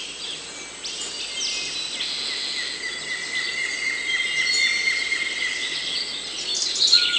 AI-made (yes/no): no